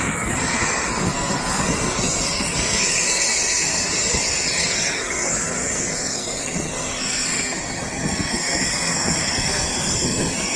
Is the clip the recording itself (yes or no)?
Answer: no